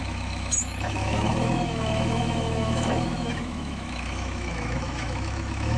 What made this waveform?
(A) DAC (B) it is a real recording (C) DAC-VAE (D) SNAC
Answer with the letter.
C